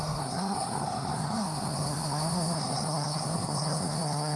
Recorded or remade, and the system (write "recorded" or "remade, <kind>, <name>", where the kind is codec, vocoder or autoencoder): remade, codec, SNAC